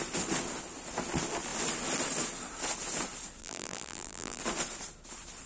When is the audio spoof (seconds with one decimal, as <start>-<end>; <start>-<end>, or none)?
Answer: 3.4-4.4